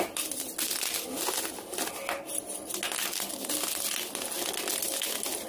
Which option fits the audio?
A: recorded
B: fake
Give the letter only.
A